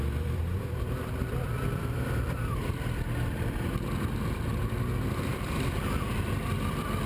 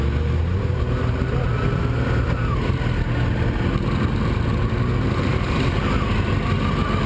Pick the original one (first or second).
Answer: second